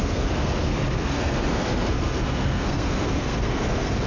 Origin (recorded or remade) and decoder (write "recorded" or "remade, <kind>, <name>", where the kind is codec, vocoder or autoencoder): remade, codec, SNAC